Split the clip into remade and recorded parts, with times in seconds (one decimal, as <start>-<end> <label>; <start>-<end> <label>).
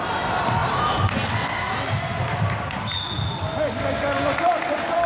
0.0-5.1 recorded